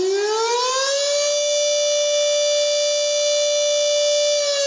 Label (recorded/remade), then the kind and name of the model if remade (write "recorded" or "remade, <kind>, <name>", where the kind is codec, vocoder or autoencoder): recorded